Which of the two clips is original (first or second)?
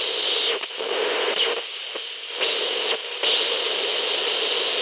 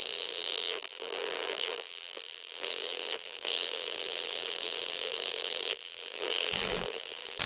first